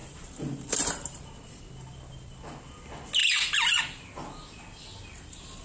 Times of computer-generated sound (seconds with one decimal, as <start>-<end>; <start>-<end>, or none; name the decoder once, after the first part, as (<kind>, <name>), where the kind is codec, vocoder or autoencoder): 0.0-1.6 (vocoder, BigVGAN v2); 3.2-3.8